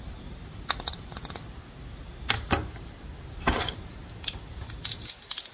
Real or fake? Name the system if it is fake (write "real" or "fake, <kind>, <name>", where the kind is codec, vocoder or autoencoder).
real